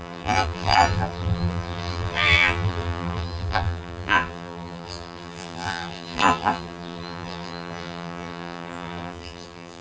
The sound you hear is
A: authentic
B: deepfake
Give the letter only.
B